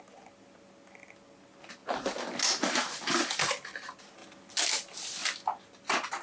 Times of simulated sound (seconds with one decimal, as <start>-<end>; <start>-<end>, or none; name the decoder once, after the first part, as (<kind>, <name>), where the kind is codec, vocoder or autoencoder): none